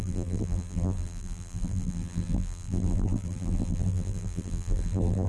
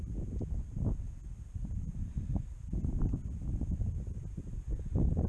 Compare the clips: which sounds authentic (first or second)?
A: second